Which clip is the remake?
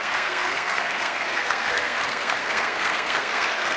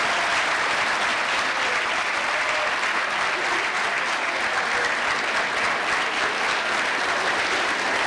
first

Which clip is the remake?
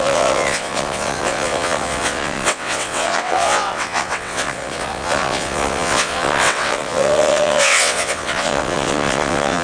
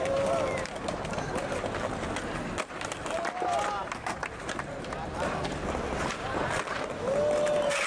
first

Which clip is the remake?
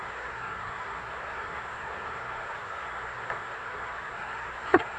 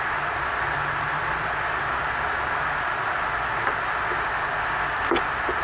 first